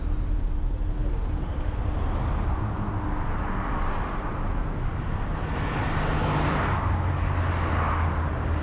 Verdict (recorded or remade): recorded